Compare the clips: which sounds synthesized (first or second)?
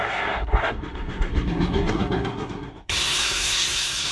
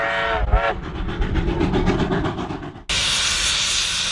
first